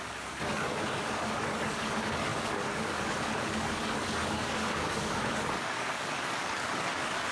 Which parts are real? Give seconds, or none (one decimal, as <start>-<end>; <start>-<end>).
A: none